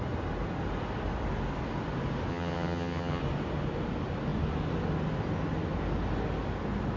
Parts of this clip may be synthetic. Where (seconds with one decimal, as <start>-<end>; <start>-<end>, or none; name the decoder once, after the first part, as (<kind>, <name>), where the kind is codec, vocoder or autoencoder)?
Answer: 2.3-3.2 (vocoder, HiFi-GAN)